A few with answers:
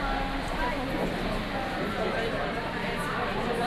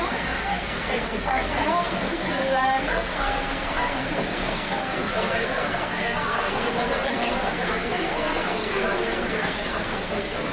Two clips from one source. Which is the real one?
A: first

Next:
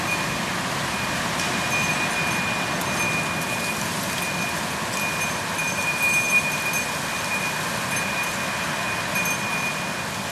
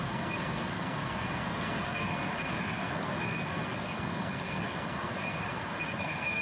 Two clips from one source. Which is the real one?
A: first